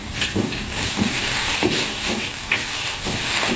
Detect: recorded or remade remade